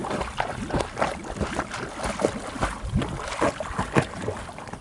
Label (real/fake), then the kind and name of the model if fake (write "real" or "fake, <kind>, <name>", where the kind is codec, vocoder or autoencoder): real